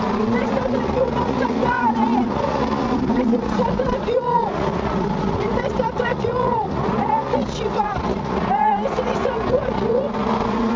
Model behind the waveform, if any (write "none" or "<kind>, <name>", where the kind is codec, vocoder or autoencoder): vocoder, Vocos